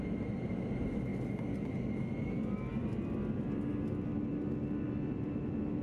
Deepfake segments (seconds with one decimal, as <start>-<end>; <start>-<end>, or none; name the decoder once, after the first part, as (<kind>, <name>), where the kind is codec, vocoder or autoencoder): none